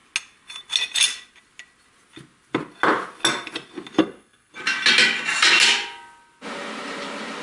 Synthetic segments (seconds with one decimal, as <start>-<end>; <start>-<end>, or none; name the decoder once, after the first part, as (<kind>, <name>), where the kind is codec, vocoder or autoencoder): 4.0-4.5 (codec, SNAC)